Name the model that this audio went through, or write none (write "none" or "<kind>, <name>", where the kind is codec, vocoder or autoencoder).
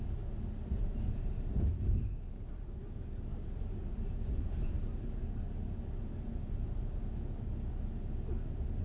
none